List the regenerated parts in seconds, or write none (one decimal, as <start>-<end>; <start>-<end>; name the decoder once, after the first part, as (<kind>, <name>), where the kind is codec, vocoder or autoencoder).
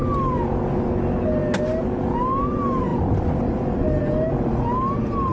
none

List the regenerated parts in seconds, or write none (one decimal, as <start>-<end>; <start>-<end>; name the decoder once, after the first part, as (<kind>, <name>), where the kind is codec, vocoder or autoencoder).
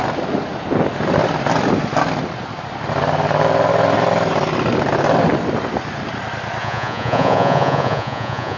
6.6-8.6 (vocoder, Vocos)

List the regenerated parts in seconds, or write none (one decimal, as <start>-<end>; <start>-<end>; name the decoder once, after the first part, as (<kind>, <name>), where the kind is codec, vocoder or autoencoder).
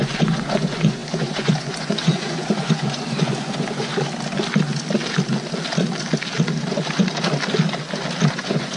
0.0-3.9 (vocoder, Vocos); 8.3-8.8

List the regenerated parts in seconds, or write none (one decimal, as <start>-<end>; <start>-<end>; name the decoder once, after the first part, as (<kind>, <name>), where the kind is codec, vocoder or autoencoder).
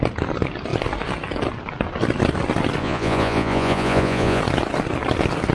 2.8-4.4 (vocoder, Vocos)